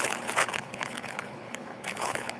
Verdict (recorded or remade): remade